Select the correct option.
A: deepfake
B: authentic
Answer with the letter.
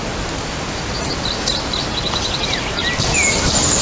B